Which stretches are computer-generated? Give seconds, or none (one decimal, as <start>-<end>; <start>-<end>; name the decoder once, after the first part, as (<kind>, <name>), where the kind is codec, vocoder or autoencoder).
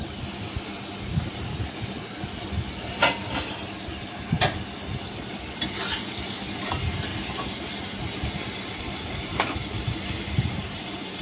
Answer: 7.1-11.2 (vocoder, BigVGAN v2)